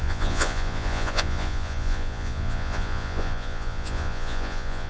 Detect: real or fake fake